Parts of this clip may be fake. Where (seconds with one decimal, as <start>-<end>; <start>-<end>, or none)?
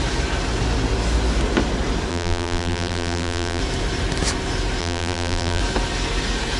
2.1-3.6; 4.8-5.6